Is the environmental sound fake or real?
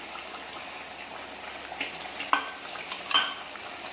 real